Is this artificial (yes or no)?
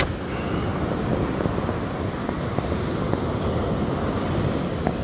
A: no